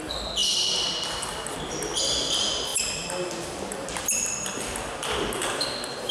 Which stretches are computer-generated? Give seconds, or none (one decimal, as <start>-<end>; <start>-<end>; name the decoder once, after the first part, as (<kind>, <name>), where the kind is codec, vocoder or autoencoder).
none

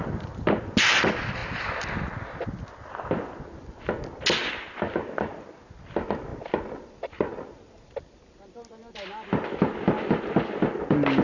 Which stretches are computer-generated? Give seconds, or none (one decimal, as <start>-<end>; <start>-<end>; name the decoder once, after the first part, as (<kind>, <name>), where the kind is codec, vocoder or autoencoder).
none

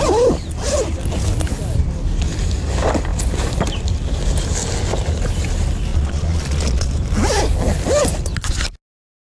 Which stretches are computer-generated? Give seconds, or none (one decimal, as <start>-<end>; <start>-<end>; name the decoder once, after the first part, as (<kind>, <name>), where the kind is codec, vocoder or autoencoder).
5.9-6.9 (vocoder, Vocos)

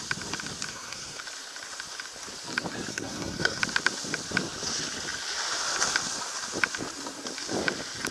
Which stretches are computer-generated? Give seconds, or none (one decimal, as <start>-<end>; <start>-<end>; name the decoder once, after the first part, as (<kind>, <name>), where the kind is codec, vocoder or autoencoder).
0.7-1.2 (codec, SNAC); 2.9-3.6

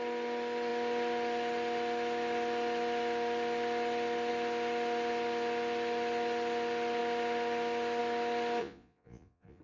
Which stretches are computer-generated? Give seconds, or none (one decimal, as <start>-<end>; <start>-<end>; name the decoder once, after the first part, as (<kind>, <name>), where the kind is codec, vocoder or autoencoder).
8.6-9.6 (vocoder, Vocos)